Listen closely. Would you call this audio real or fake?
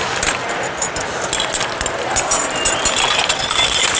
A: real